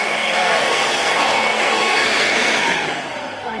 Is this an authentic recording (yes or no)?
no